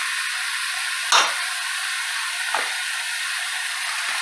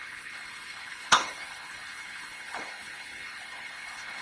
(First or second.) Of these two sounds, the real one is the first